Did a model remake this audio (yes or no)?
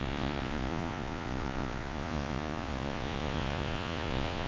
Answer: yes